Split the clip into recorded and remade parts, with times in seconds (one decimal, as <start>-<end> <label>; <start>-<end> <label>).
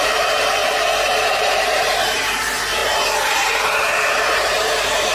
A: 0.0-0.6 remade; 0.6-1.3 recorded; 1.3-5.1 remade